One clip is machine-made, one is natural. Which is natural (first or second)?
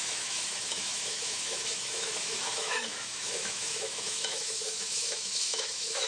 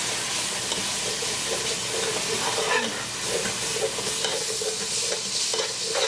second